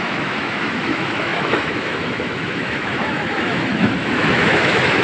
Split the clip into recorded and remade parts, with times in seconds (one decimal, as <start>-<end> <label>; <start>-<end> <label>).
0.0-5.0 remade